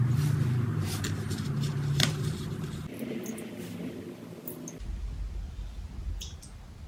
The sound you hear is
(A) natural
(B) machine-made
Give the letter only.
A